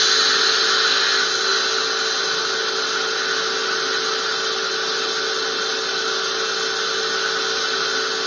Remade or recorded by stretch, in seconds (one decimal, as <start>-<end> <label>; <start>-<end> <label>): 0.0-8.3 recorded